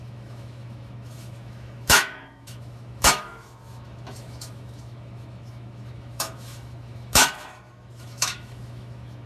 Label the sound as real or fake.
fake